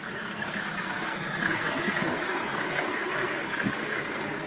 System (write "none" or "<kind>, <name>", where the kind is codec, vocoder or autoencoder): codec, SNAC